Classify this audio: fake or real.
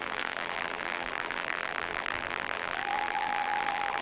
fake